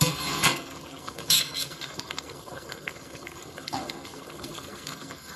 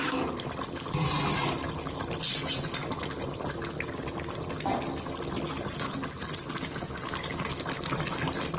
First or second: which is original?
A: second